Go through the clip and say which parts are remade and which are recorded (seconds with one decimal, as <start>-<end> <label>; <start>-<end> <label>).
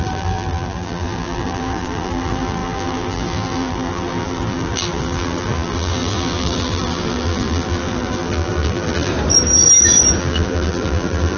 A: 0.0-9.1 remade; 9.1-10.2 recorded; 10.2-11.4 remade